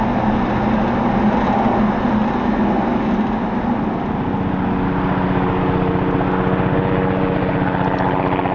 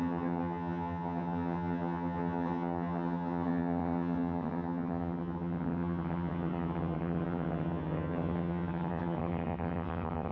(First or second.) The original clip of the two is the first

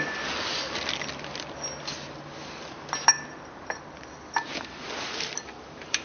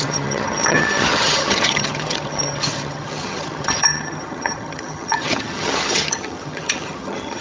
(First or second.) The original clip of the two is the first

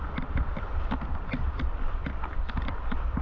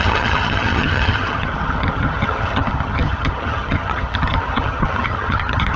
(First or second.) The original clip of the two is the first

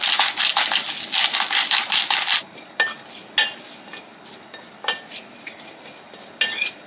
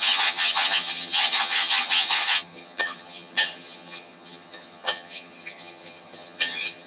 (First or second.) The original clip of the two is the first